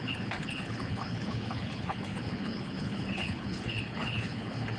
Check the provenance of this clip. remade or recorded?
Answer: remade